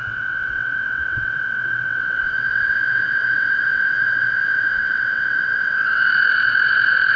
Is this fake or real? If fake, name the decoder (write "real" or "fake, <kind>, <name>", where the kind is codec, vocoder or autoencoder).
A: fake, vocoder, WaveNeXt